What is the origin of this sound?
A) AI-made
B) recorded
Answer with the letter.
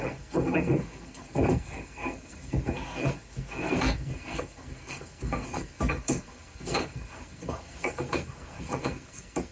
A